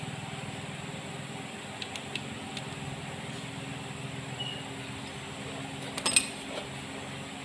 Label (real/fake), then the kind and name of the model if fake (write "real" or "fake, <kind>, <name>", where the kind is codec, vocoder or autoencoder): real